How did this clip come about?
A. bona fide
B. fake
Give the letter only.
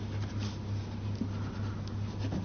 A